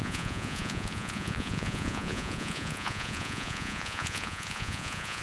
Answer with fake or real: fake